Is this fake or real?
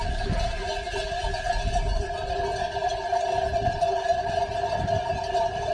real